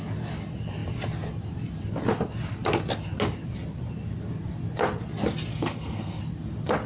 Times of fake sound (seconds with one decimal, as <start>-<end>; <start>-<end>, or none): 5.5-6.2

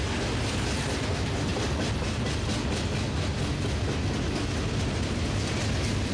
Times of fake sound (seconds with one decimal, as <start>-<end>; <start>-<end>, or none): none

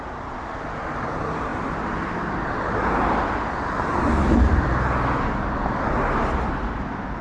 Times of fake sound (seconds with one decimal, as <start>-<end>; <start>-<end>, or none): none

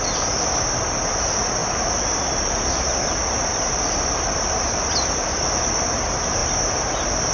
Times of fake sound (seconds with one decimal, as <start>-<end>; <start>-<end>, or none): none

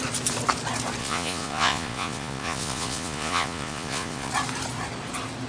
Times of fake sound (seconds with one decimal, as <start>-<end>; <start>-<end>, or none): 1.0-4.3

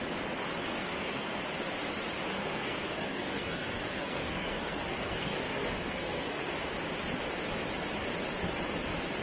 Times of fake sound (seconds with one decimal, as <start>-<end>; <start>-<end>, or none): 0.8-1.4; 2.3-6.5